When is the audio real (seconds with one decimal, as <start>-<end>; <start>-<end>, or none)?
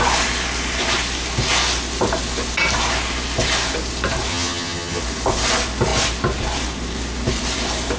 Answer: 0.0-4.3; 5.0-8.0